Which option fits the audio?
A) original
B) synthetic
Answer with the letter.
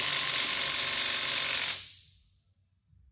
A